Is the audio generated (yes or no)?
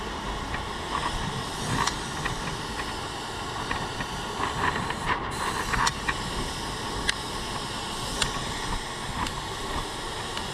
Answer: no